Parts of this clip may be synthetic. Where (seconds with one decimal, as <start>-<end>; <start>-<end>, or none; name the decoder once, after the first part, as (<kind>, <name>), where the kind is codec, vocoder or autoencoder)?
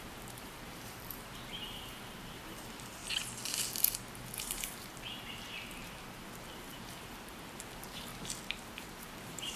0.0-3.0 (vocoder, BigVGAN v2); 4.1-8.1; 8.7-9.6